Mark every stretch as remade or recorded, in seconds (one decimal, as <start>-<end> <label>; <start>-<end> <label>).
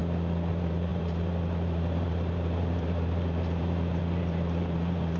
0.0-0.5 recorded; 0.5-5.2 remade